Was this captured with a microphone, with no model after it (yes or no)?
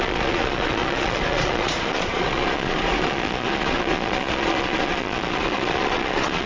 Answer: no